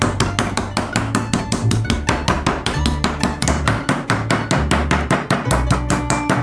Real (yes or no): yes